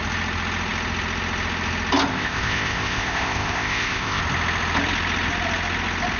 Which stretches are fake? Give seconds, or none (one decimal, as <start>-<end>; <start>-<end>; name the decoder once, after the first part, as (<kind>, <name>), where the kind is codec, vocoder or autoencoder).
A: 2.1-4.2 (codec, ZipCodec)

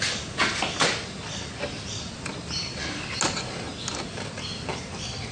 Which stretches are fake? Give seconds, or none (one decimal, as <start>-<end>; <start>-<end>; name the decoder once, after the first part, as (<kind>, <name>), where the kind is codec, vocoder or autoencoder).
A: none